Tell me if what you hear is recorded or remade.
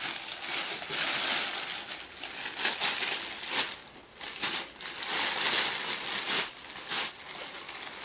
recorded